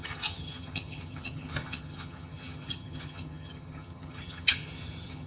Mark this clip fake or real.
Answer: fake